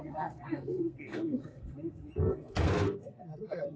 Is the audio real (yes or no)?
no